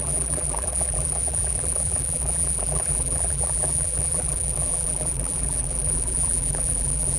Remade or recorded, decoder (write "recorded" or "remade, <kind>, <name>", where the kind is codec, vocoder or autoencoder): remade, vocoder, BigVGAN v2